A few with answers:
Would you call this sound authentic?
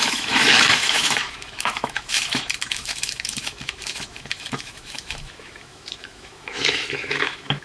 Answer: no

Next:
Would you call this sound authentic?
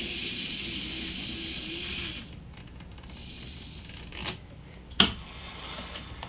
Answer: yes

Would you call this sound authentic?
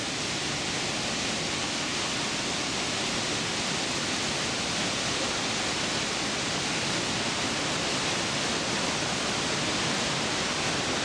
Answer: yes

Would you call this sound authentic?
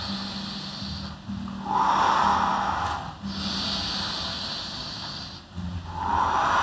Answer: yes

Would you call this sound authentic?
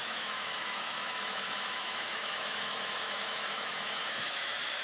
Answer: no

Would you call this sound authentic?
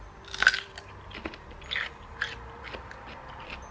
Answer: yes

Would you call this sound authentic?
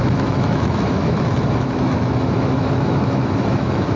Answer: no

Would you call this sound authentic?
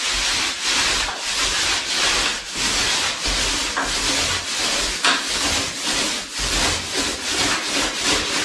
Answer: yes